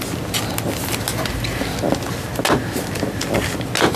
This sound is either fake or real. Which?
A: real